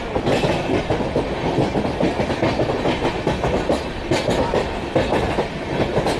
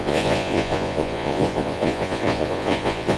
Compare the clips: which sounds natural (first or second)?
first